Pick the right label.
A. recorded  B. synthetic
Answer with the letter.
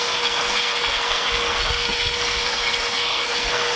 B